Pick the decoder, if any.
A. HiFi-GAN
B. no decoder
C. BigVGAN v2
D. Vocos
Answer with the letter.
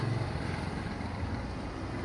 B